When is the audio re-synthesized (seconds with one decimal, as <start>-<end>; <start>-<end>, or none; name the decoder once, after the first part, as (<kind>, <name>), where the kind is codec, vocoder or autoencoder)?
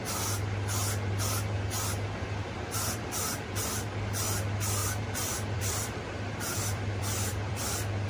4.8-8.1 (vocoder, BigVGAN v2)